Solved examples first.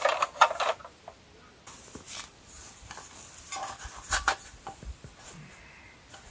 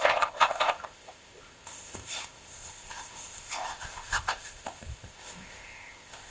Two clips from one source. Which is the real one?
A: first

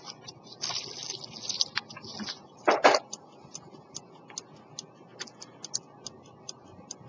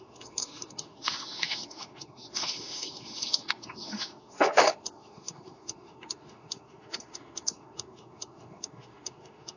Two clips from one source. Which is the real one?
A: first